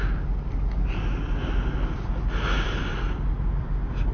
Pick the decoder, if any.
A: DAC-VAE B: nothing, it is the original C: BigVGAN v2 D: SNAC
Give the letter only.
B